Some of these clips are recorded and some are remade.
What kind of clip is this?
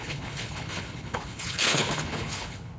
remade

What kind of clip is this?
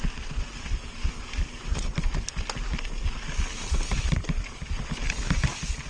recorded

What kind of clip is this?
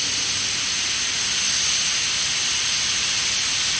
recorded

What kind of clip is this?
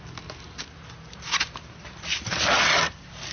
recorded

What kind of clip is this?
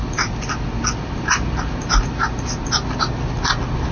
recorded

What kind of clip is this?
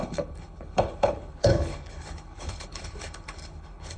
remade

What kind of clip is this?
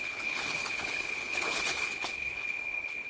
remade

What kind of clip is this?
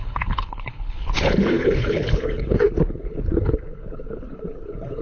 remade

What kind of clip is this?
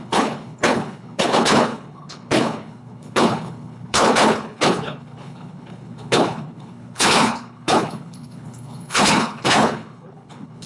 remade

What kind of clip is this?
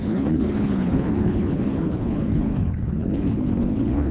remade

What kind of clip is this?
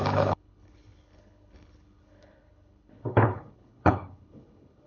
remade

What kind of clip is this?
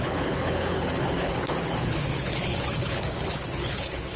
remade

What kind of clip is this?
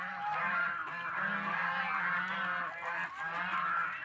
recorded